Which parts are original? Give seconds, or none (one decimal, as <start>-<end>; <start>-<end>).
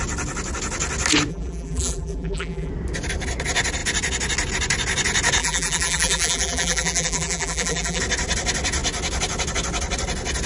0.0-1.3; 2.7-5.4; 8.0-10.5